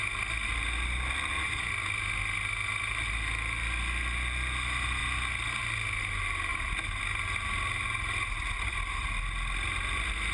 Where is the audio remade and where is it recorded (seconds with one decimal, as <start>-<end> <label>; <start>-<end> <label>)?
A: 0.0-10.3 recorded